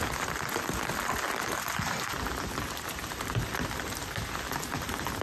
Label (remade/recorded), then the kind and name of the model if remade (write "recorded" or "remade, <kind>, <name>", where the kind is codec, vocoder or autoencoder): recorded